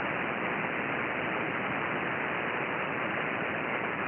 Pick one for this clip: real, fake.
real